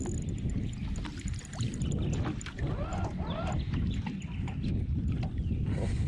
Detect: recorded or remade recorded